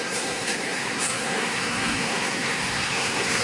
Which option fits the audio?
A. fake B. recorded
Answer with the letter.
A